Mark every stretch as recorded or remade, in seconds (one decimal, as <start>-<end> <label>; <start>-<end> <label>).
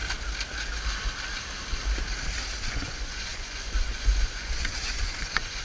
0.0-2.6 recorded; 2.6-5.6 remade